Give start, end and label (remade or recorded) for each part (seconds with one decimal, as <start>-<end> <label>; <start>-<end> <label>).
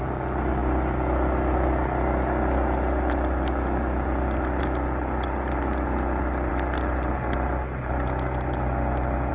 0.0-9.3 recorded